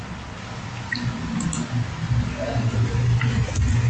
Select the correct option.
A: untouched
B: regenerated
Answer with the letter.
A